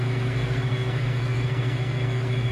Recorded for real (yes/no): no